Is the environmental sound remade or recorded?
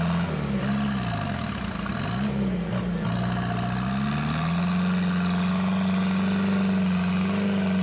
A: recorded